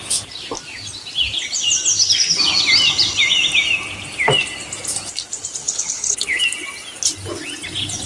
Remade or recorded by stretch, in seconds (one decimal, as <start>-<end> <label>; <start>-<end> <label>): 0.0-5.6 recorded; 5.6-6.4 remade; 6.4-8.1 recorded